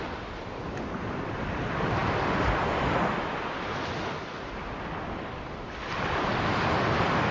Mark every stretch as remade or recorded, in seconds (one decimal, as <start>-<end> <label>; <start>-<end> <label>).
0.0-7.3 recorded

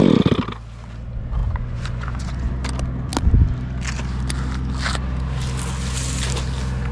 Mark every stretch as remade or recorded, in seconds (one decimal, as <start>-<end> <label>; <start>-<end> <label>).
0.0-1.4 recorded; 1.4-2.5 remade; 2.5-6.9 recorded

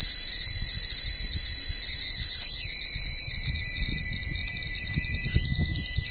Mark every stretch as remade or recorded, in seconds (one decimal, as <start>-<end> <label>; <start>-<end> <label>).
0.0-6.1 recorded

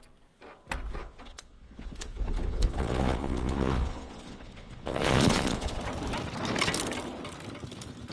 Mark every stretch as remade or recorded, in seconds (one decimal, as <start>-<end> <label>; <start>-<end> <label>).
0.0-1.0 recorded; 1.0-5.8 remade; 5.8-8.1 recorded

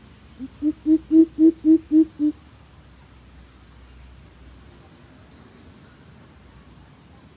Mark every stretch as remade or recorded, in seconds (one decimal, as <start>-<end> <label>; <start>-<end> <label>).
0.0-7.4 recorded

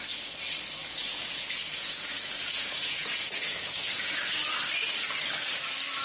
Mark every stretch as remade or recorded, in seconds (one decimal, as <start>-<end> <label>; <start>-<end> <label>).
0.0-1.0 recorded; 1.0-4.1 remade; 4.1-6.0 recorded